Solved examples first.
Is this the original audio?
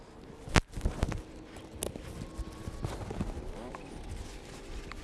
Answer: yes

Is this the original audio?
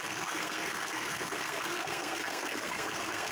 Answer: no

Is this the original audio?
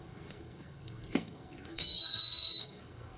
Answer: no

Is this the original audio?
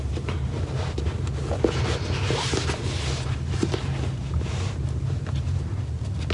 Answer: yes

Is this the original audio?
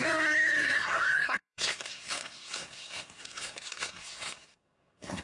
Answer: no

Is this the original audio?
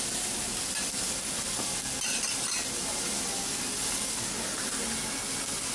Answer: yes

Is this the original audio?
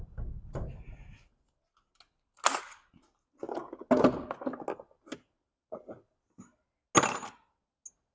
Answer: yes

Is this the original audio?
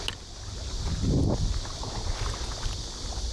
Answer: yes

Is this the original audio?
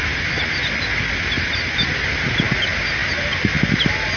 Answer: yes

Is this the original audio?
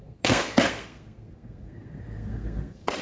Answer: no